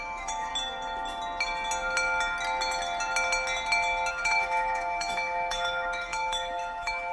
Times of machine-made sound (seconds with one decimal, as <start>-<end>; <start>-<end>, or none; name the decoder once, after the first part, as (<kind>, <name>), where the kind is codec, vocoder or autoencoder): 0.0-0.5 (autoencoder, DAC-VAE); 4.1-7.1